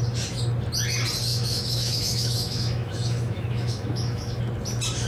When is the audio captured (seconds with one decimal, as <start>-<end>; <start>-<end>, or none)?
0.0-1.3; 4.4-5.1